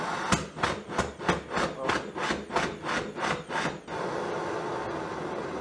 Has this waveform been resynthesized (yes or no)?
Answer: no